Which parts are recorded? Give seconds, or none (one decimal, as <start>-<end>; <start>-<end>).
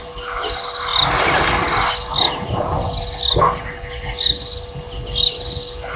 0.0-6.0